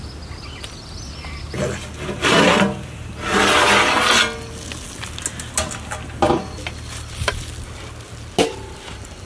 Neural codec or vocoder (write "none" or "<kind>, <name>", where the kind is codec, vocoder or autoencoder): none